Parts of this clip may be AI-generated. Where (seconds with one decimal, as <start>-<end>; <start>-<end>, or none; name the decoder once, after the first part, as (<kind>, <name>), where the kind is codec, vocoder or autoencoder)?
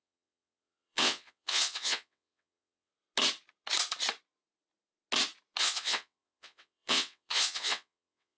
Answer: 0.0-2.9 (vocoder, WaveNeXt); 5.6-8.4